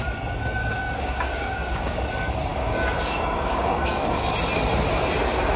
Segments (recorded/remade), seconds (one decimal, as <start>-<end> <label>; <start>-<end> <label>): 0.0-0.6 recorded; 0.6-2.1 remade; 2.1-2.5 recorded; 2.5-4.2 remade; 4.2-5.6 recorded